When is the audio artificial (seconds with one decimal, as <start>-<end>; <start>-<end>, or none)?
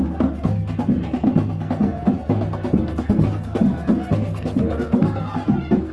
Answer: 0.0-5.9